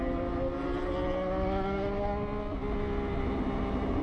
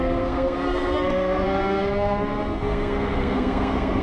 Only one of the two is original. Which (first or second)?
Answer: first